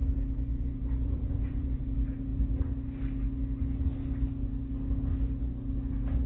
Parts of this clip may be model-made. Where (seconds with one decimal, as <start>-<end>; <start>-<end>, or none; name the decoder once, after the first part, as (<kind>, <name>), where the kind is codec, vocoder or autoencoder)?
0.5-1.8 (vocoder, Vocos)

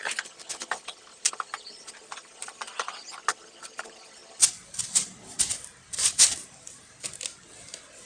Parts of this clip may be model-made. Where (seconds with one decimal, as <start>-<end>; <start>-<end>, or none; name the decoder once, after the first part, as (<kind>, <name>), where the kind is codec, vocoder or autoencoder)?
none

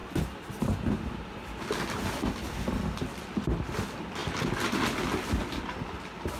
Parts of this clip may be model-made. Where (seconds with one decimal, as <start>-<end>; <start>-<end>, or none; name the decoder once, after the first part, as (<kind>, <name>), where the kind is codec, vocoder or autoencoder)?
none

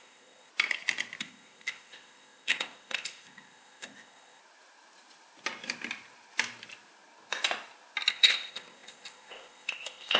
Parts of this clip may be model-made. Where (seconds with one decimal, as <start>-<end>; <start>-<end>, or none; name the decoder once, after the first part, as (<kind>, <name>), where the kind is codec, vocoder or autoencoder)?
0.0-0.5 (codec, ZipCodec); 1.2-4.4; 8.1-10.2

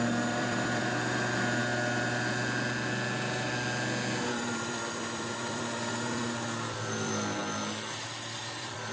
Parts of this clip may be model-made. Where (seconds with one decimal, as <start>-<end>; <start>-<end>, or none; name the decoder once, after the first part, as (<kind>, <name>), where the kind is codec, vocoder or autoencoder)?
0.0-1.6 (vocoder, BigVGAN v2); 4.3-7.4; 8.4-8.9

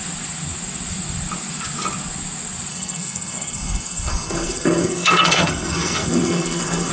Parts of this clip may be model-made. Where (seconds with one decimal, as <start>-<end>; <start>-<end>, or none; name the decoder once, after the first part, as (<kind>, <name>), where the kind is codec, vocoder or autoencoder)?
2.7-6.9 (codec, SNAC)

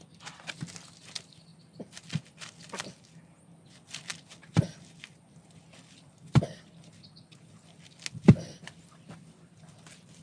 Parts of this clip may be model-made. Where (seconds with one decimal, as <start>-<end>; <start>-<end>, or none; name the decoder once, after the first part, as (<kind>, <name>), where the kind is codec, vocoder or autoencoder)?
none